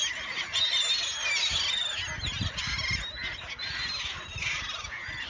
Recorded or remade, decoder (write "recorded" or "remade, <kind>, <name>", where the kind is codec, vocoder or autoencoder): recorded